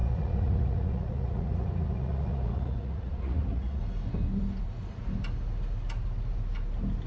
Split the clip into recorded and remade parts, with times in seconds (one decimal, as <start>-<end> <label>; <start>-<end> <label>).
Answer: 0.0-3.8 remade; 3.8-7.1 recorded